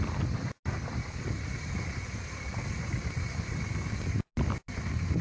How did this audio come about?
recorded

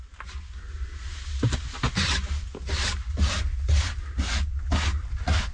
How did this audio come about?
recorded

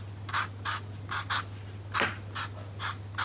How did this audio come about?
recorded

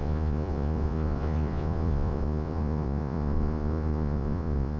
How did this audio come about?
remade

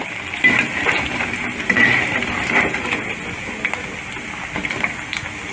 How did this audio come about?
recorded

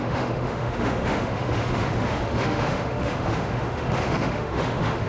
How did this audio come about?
remade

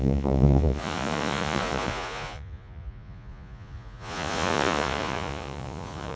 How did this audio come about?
remade